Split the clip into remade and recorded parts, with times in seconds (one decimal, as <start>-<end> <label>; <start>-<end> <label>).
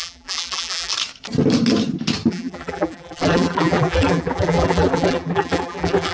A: 0.0-0.9 remade; 0.9-2.3 recorded; 2.3-6.1 remade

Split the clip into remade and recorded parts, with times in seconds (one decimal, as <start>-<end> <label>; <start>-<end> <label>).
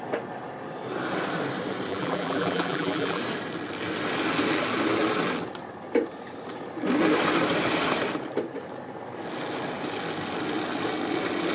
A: 0.0-1.9 recorded; 1.9-3.2 remade; 3.2-11.5 recorded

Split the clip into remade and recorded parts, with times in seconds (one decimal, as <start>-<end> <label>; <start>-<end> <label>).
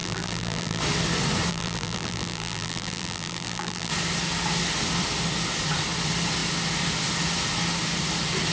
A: 0.0-0.8 remade; 0.8-1.5 recorded; 1.5-3.9 remade; 3.9-8.5 recorded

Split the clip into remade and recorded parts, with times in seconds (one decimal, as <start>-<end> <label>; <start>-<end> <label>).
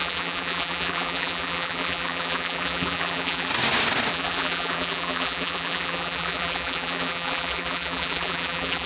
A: 0.0-3.5 remade; 3.5-4.1 recorded; 4.1-8.9 remade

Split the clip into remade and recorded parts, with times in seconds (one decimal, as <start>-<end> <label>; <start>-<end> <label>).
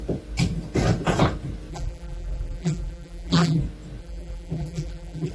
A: 0.0-1.7 recorded; 1.7-3.6 remade; 3.6-4.0 recorded; 4.0-5.3 remade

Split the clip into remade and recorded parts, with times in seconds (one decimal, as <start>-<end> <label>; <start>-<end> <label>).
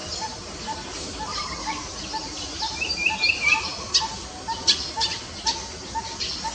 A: 0.0-3.3 remade; 3.3-6.5 recorded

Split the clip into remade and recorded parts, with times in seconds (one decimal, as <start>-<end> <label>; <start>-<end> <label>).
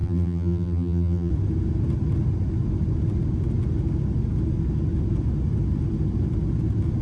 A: 0.0-1.3 remade; 1.3-7.0 recorded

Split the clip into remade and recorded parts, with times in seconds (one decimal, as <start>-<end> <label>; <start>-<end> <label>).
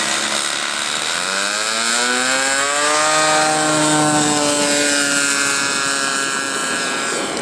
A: 0.0-6.6 recorded; 6.6-7.4 remade